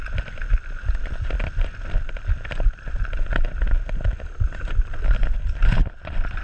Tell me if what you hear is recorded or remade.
recorded